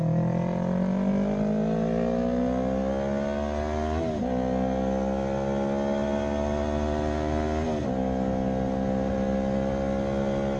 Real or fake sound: real